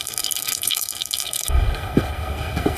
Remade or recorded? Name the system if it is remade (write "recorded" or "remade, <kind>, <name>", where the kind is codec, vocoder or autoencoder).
remade, codec, SNAC